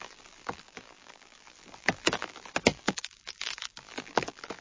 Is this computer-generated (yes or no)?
yes